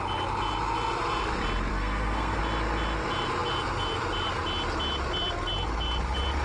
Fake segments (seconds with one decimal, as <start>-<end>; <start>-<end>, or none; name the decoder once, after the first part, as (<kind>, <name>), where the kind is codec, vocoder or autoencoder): 1.7-2.4 (codec, SNAC)